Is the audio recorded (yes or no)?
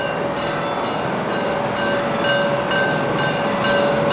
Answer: yes